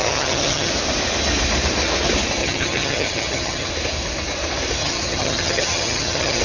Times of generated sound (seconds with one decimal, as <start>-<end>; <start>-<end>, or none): 0.0-0.7; 2.4-3.7; 4.8-6.4